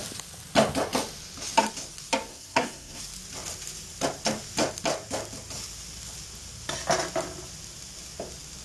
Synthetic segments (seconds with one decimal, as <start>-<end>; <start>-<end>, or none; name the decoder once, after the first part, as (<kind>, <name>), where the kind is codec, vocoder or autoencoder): 2.3-3.0 (codec, SNAC)